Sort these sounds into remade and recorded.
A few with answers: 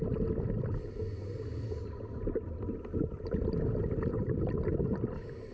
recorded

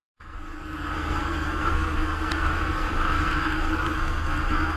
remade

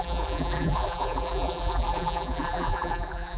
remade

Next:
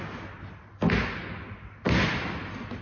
recorded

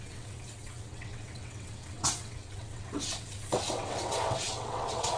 remade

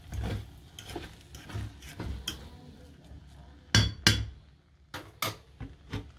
recorded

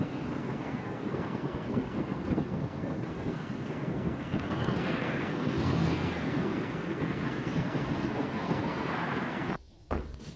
remade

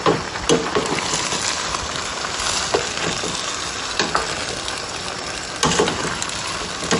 recorded